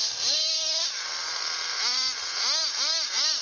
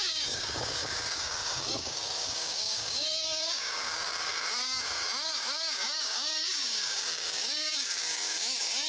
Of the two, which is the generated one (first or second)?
second